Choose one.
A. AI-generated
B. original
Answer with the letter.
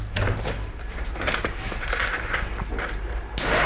A